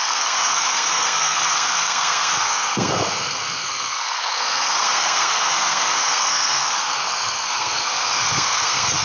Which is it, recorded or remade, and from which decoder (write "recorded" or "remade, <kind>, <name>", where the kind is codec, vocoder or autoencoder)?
remade, codec, SNAC